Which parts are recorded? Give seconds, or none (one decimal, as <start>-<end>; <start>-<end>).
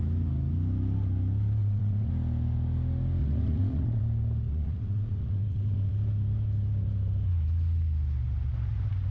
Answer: 0.0-1.6; 2.1-3.2; 4.0-4.5; 5.9-9.1